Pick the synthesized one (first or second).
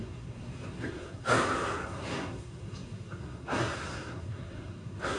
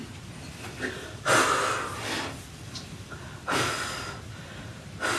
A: first